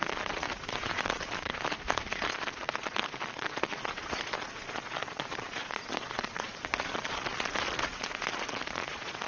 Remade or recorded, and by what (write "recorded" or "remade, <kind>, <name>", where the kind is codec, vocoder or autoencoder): remade, vocoder, Vocos